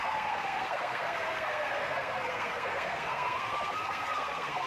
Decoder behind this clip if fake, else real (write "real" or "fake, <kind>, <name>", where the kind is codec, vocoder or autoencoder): fake, codec, SNAC